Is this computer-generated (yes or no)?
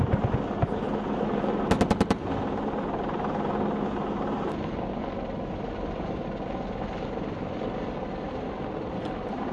no